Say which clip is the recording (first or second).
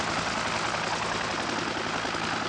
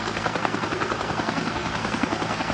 first